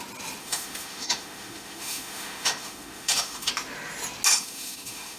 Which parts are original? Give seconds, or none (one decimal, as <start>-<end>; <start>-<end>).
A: 0.0-0.4; 3.5-4.3